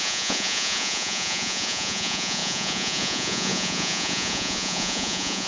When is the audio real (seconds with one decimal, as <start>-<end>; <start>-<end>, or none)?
none